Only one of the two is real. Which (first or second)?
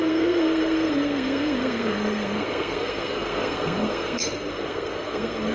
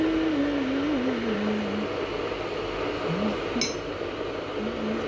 second